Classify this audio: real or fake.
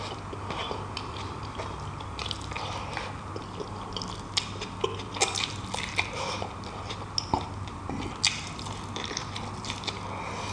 real